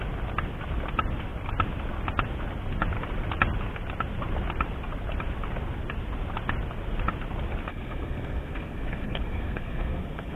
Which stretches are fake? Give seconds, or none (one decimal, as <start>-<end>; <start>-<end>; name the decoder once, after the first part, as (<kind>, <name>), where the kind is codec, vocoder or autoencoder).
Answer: 7.7-10.4 (codec, SNAC)